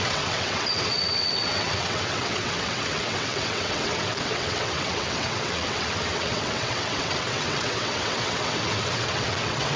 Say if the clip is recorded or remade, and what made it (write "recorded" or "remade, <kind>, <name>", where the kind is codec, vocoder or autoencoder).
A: remade, vocoder, WaveNeXt